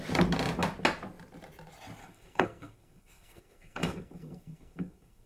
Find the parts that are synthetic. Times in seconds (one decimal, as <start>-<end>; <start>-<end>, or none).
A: 2.0-5.3